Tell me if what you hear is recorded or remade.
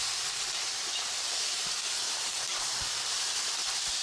remade